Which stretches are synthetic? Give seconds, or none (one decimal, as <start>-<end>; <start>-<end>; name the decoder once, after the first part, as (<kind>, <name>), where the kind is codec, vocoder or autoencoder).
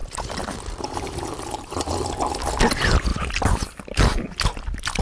none